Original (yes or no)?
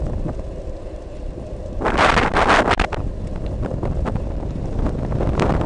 no